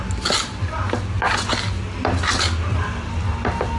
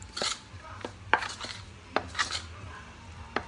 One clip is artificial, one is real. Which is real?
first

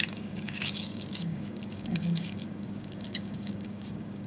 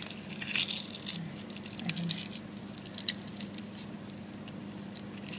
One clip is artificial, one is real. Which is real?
second